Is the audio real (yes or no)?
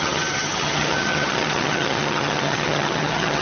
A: no